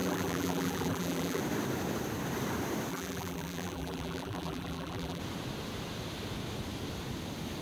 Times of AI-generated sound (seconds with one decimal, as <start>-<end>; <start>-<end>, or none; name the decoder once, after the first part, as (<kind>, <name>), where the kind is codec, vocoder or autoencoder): 0.0-1.4 (vocoder, BigVGAN v2); 2.9-5.2